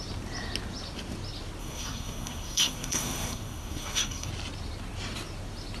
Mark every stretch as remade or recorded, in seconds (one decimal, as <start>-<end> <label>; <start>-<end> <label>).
0.0-1.6 recorded; 1.6-4.3 remade; 4.3-5.8 recorded